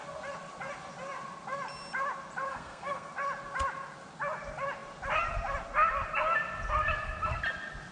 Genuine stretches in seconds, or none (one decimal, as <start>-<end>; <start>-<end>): 0.0-2.5; 3.1-7.9